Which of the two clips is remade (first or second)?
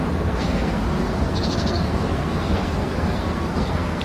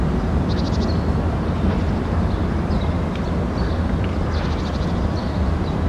first